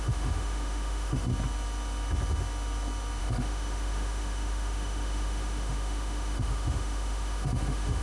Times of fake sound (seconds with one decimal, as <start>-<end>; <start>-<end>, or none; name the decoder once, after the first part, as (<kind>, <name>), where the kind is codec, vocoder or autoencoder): 0.0-1.3 (autoencoder, DAC-VAE); 3.2-8.0